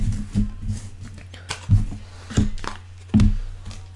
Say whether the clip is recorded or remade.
recorded